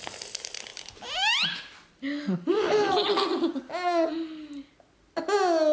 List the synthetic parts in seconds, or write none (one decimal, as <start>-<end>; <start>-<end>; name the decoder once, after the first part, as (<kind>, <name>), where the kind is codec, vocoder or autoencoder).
none